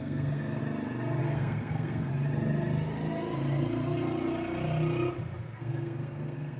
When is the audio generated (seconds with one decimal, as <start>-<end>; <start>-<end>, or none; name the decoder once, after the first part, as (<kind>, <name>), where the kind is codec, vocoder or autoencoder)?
0.0-0.6 (codec, SNAC); 1.2-2.1; 5.6-6.6

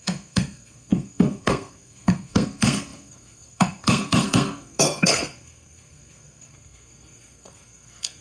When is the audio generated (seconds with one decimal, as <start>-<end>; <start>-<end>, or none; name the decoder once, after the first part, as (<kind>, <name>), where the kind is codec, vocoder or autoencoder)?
0.0-8.2 (codec, SNAC)

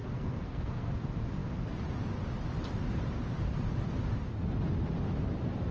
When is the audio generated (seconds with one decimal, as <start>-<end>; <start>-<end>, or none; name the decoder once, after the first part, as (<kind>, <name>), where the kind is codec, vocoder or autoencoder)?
0.0-0.9 (codec, SNAC)